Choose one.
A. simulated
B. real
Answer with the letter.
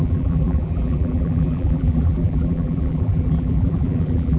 A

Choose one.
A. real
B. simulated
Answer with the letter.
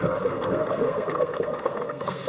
B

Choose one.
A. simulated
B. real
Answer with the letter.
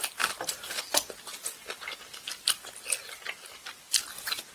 B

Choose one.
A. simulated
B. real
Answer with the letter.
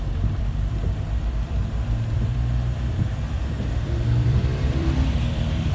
A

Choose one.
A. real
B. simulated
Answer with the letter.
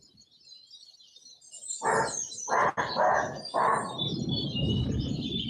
A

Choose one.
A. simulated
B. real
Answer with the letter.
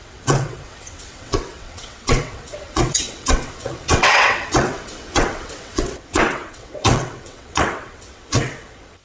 A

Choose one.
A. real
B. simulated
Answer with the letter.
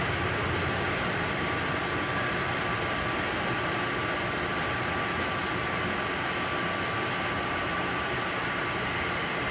A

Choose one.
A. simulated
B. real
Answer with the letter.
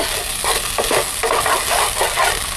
B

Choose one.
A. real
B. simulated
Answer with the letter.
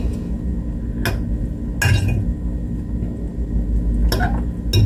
A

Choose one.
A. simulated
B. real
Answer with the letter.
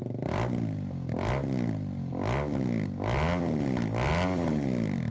B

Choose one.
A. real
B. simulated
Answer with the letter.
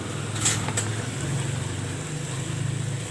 A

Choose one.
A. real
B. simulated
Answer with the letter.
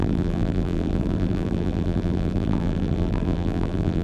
B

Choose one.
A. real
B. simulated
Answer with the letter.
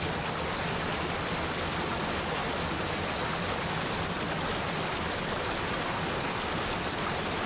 A